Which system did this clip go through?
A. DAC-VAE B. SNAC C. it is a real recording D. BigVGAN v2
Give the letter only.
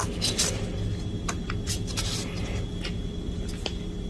C